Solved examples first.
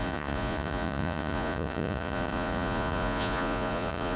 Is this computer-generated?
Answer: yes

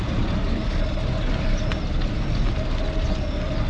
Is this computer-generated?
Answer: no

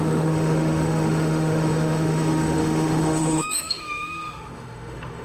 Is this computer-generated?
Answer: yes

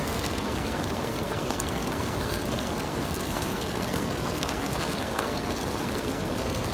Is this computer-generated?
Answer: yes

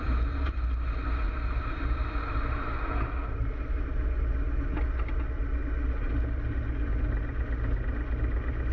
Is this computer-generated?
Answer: no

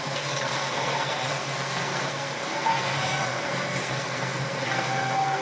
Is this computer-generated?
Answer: yes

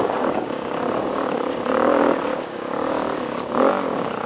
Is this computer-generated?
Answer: yes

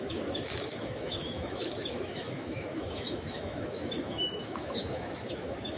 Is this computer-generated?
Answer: yes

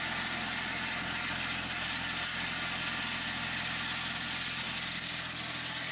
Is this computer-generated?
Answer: no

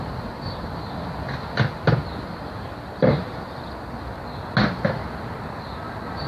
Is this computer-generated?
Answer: no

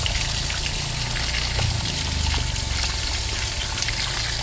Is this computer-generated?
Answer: no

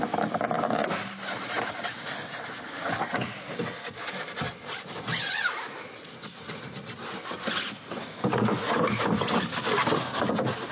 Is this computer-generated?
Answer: no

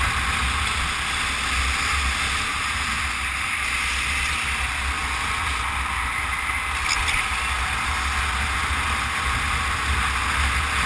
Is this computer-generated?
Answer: no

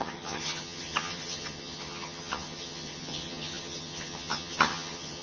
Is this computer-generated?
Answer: yes